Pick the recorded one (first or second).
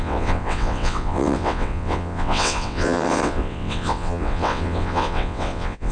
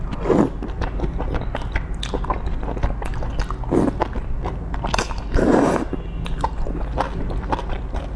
second